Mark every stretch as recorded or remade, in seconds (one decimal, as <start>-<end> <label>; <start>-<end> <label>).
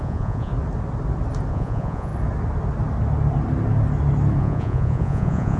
0.0-0.5 remade; 0.5-1.5 recorded; 1.5-2.1 remade; 2.1-4.4 recorded; 4.4-5.6 remade